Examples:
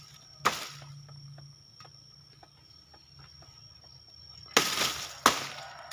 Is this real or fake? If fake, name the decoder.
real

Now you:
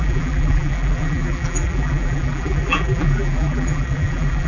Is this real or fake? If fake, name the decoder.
fake, vocoder, BigVGAN v2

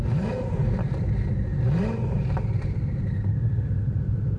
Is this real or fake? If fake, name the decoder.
fake, vocoder, BigVGAN v2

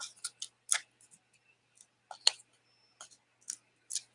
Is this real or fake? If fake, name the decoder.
real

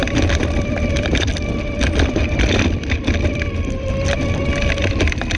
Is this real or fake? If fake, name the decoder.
fake, vocoder, BigVGAN v2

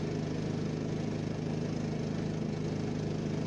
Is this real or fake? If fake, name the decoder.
real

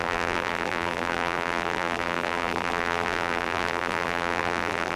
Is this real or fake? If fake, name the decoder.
fake, vocoder, BigVGAN v2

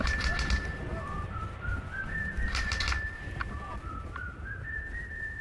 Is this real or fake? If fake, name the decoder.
real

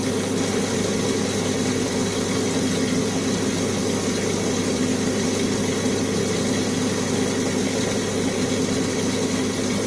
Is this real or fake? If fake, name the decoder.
real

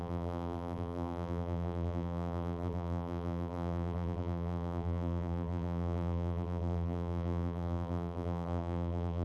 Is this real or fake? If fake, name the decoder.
fake, vocoder, BigVGAN v2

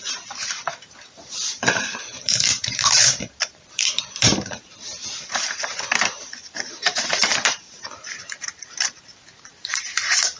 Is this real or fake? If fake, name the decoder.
fake, vocoder, BigVGAN v2